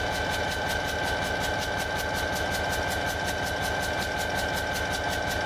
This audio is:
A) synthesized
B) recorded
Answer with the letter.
B